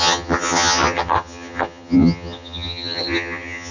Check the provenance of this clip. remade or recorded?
remade